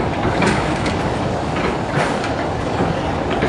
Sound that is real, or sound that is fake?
fake